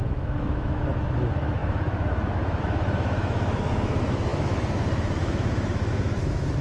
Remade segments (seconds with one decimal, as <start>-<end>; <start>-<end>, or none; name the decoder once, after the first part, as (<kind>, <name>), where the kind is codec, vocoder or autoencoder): 0.0-6.6 (autoencoder, DAC-VAE)